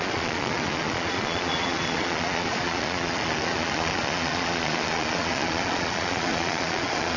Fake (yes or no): yes